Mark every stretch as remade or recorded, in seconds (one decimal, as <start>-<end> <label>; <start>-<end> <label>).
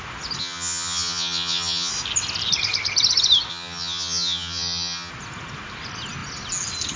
0.0-0.4 recorded; 0.4-1.9 remade; 1.9-3.5 recorded; 3.5-5.1 remade; 5.1-7.0 recorded